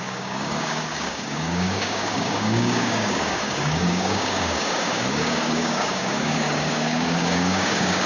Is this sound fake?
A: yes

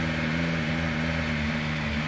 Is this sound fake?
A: no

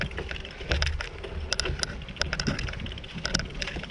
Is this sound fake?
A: no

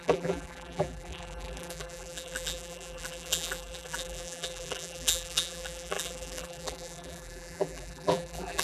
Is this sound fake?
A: yes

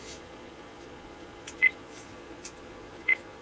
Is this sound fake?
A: yes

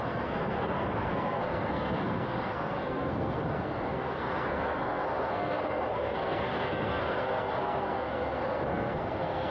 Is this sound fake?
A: yes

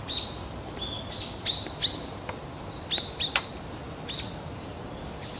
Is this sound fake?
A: no